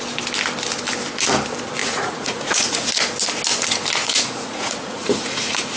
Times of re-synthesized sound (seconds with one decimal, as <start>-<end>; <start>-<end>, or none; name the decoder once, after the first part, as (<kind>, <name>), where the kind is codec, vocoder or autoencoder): 1.8-2.9 (vocoder, Vocos); 4.0-5.8

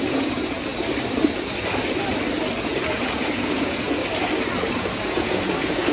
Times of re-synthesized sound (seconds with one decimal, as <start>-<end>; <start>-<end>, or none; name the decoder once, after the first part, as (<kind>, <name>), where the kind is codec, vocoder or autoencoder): 0.0-0.7 (vocoder, Vocos); 2.6-4.0; 4.7-5.9